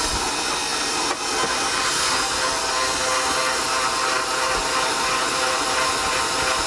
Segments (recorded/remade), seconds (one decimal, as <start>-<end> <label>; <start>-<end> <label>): 0.0-6.7 recorded